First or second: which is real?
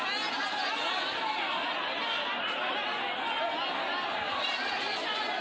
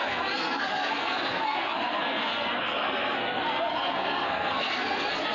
first